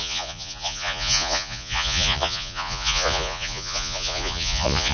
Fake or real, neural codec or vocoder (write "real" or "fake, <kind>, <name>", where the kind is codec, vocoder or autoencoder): fake, vocoder, Vocos